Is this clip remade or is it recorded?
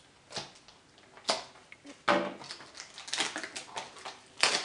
recorded